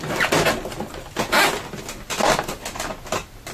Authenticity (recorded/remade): recorded